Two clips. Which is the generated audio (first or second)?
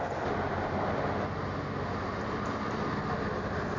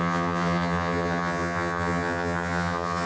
second